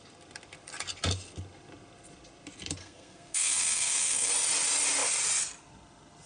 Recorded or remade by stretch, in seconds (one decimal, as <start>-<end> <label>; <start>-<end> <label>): 0.0-2.8 recorded; 2.8-4.3 remade; 4.3-6.3 recorded